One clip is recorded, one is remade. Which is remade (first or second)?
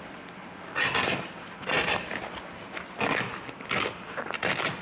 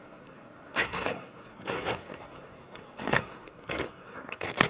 second